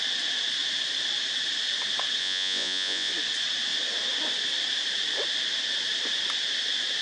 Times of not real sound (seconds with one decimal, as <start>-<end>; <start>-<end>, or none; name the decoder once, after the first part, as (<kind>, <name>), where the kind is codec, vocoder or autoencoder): 2.2-3.1 (vocoder, Vocos)